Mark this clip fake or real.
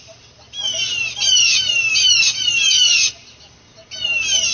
real